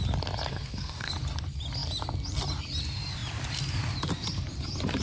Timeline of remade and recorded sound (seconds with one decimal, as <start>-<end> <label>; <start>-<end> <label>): 0.0-0.5 recorded; 0.5-1.1 remade; 1.1-5.0 recorded